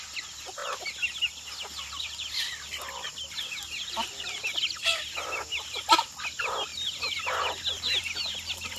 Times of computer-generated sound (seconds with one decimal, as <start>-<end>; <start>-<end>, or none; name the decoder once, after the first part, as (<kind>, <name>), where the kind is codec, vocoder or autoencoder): 0.0-0.6 (vocoder, BigVGAN v2); 1.9-8.8